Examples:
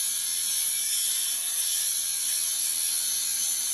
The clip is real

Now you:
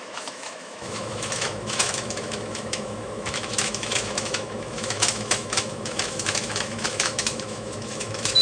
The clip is fake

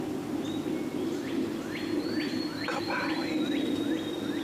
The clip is real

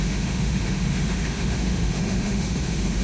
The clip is fake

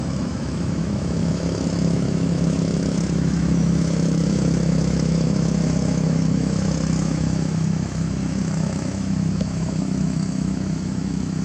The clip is fake